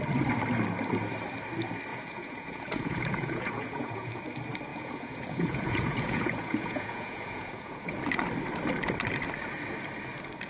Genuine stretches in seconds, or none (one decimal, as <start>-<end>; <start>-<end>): 0.0-1.9; 4.2-4.7; 8.0-10.5